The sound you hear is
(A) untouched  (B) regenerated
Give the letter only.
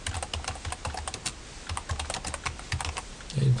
A